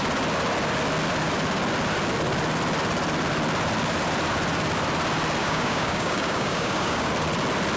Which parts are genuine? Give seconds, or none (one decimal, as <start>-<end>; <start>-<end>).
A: 0.0-5.4; 7.1-7.8